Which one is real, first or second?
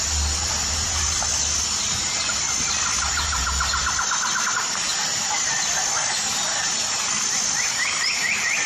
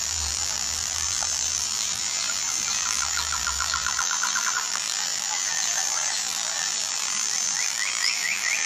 first